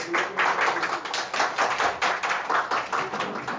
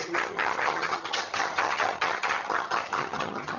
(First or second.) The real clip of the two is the first